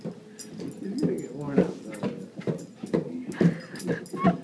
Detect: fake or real real